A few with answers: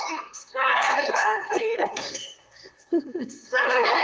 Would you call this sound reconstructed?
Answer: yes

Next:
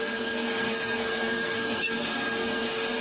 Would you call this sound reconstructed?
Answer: yes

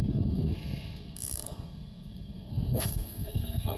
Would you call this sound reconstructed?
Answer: yes